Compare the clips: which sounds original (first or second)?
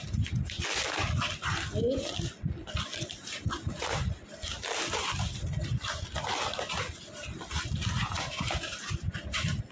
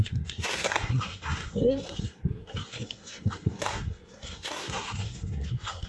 first